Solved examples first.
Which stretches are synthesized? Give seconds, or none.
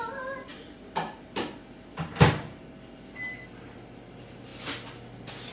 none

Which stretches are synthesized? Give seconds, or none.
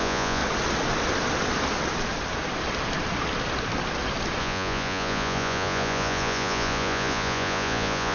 0.0-0.4 (vocoder, Vocos); 4.4-8.1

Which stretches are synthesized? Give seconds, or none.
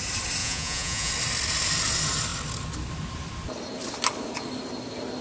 0.4-1.1 (vocoder, Vocos)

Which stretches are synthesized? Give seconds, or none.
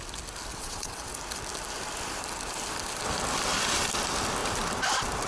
0.5-1.1 (vocoder, WaveNeXt)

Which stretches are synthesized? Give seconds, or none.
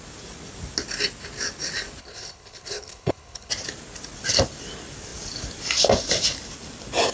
2.0-3.5 (codec, HILCodec)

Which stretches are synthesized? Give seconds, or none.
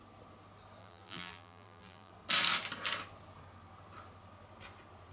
0.8-2.1 (vocoder, BigVGAN v2)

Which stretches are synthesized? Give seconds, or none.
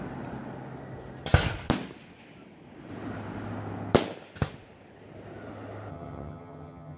5.9-7.0 (vocoder, HiFi-GAN)